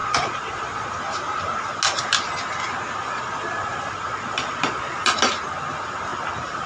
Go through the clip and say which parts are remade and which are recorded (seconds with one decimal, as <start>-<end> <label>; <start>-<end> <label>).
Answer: 0.0-0.9 remade; 0.9-3.0 recorded; 3.0-5.0 remade; 5.0-6.7 recorded